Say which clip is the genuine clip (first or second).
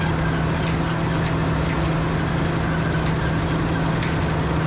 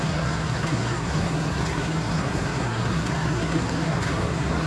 first